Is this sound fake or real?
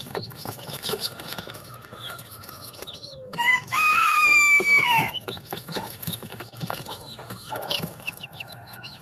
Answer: fake